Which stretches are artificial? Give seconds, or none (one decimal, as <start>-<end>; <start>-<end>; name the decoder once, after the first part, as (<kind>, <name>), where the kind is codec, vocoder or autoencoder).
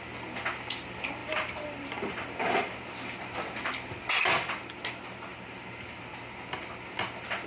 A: 1.2-2.8 (vocoder, BigVGAN v2); 5.3-6.0